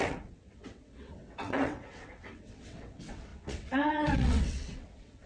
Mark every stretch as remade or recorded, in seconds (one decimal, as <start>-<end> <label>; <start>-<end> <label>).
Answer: 0.0-5.3 remade